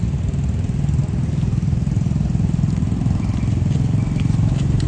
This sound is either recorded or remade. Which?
recorded